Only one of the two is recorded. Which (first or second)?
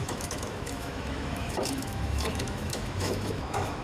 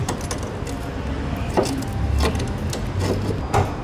second